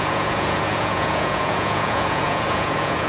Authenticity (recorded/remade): remade